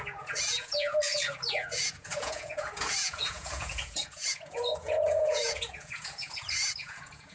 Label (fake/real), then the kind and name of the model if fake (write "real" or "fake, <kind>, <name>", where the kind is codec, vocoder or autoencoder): fake, vocoder, Vocos